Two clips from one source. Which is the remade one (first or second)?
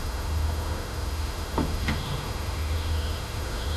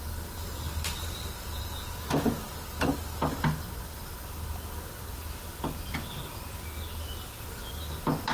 first